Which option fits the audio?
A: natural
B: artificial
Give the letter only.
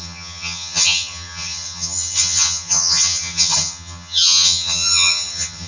B